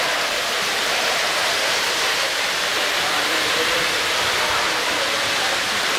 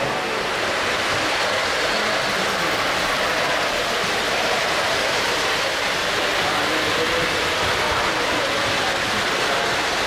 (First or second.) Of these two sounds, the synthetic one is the first